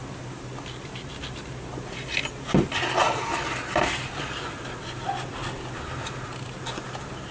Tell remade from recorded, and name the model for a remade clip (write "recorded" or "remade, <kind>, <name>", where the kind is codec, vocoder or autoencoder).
recorded